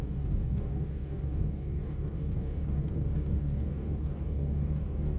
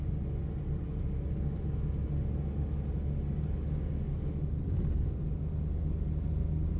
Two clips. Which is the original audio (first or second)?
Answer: second